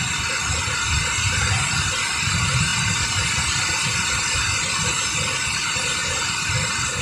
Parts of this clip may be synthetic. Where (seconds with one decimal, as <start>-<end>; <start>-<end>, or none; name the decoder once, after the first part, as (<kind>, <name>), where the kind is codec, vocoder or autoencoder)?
none